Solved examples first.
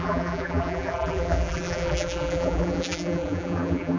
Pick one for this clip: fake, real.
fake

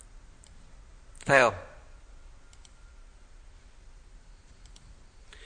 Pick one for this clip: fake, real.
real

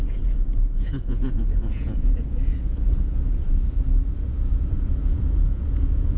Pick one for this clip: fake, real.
fake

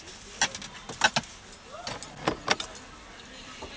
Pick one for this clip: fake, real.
real